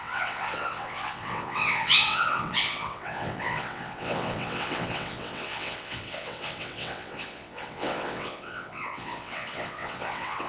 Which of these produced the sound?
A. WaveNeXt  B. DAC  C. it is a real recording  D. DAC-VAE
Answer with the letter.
A